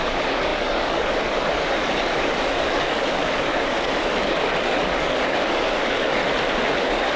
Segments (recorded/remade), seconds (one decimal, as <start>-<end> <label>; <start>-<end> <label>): 0.0-6.2 remade; 6.2-6.8 recorded; 6.8-7.2 remade